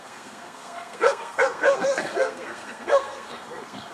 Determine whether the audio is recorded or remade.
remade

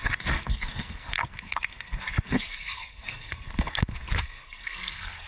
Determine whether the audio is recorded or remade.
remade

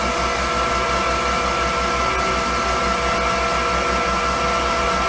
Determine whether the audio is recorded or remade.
recorded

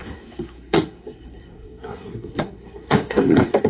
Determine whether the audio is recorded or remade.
remade